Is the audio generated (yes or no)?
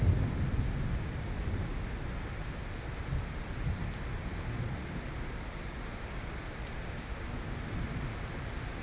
no